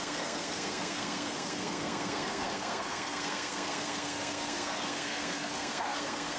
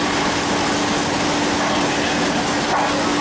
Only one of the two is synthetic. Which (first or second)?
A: first